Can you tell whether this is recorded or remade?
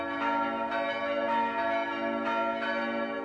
recorded